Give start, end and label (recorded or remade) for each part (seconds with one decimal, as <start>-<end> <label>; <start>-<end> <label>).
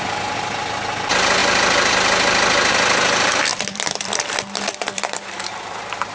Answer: 0.0-1.4 recorded; 1.4-1.9 remade; 1.9-3.5 recorded; 3.5-6.1 remade